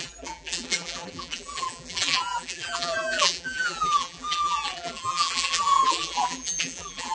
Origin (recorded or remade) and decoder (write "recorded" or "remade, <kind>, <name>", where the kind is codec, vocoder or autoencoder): remade, vocoder, BigVGAN v2